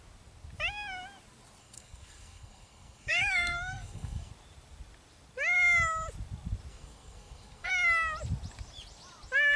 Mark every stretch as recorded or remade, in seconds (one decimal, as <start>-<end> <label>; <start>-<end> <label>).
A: 0.0-1.6 recorded; 1.6-4.3 remade; 4.3-6.7 recorded; 6.7-7.7 remade; 7.7-9.6 recorded

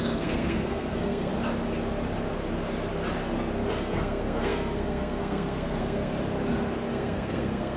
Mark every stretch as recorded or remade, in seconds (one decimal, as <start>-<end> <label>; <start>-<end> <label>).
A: 0.0-1.3 remade; 1.3-3.7 recorded; 3.7-6.1 remade; 6.1-6.9 recorded; 6.9-7.8 remade

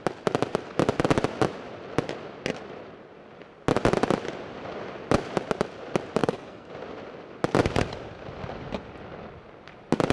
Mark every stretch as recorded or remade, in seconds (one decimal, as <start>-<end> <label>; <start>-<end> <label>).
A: 0.0-6.2 recorded; 6.2-6.7 remade; 6.7-10.1 recorded

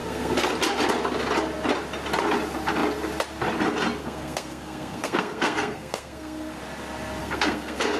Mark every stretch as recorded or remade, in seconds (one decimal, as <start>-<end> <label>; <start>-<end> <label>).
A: 0.0-0.5 remade; 0.5-4.0 recorded; 4.0-6.6 remade; 6.6-7.2 recorded; 7.2-8.0 remade

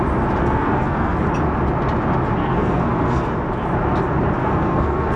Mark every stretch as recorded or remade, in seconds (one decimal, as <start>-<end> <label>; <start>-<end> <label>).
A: 0.0-0.4 recorded; 0.4-1.2 remade; 1.2-2.4 recorded; 2.4-3.3 remade; 3.3-4.4 recorded; 4.4-5.2 remade

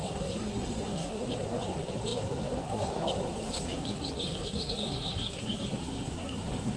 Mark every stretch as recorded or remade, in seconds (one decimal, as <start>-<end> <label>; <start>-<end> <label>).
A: 0.0-6.8 remade

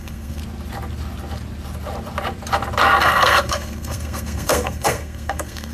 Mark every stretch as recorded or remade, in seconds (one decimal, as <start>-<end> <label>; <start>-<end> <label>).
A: 0.0-0.4 remade; 0.4-3.0 recorded; 3.0-5.7 remade